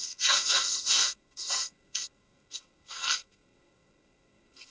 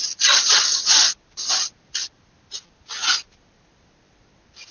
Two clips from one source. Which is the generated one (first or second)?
first